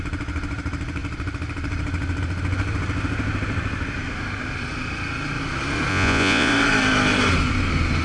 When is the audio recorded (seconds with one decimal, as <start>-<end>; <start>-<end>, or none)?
0.0-5.9; 6.5-8.0